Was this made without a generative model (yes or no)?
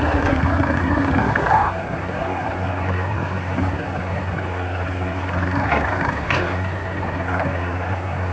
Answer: no